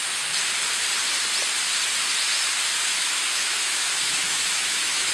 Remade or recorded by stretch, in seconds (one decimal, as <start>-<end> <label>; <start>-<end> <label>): 0.0-2.9 recorded; 2.9-5.1 remade